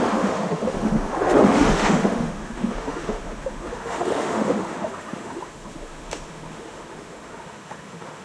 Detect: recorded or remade remade